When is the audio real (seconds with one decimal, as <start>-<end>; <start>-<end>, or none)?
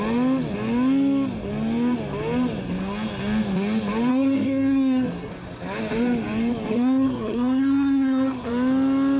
0.0-4.1; 5.3-6.7; 8.5-9.2